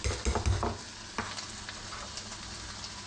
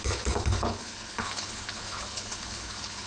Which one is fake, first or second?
second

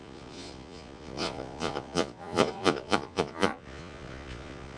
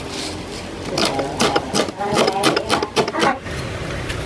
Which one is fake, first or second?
first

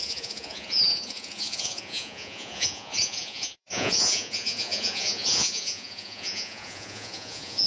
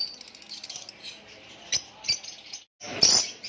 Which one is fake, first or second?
first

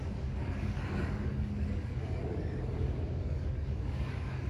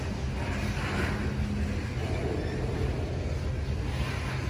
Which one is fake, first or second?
first